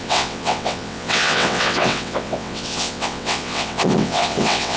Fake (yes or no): yes